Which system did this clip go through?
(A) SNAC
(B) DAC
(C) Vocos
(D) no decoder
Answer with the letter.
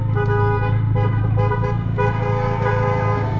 B